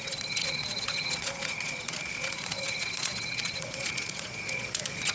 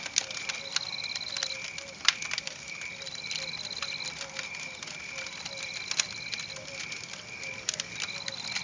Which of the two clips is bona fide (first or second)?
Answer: second